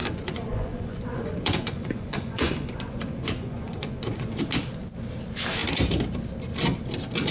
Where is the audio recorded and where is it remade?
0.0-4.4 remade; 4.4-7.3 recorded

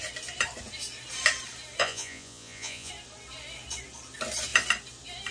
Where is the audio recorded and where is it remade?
0.0-1.8 recorded; 1.8-2.9 remade; 2.9-5.3 recorded

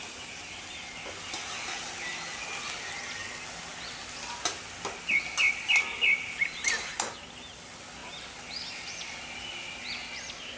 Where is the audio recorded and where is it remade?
0.0-10.6 recorded

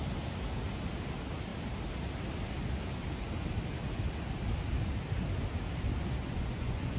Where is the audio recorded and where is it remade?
0.0-6.2 recorded; 6.2-7.0 remade

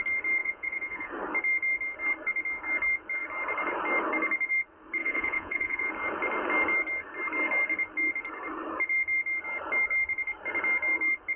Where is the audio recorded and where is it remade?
0.0-0.4 recorded; 0.4-1.1 remade; 1.1-5.0 recorded; 5.0-5.9 remade; 5.9-11.4 recorded

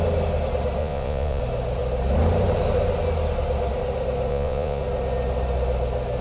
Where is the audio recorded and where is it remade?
0.0-0.8 recorded; 0.8-1.4 remade; 1.4-4.3 recorded; 4.3-4.8 remade; 4.8-6.2 recorded

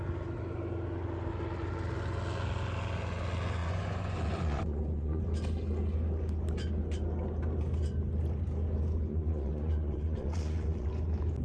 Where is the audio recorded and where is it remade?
0.0-3.6 recorded; 3.6-5.2 remade; 5.2-9.1 recorded; 9.1-10.9 remade; 10.9-11.4 recorded

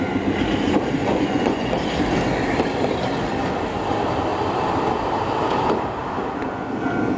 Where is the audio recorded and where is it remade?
0.0-1.0 recorded; 1.0-1.7 remade; 1.7-7.2 recorded